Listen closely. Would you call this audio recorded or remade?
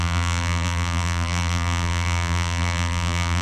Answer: remade